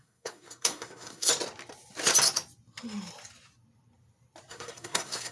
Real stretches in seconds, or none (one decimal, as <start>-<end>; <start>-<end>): 1.3-4.5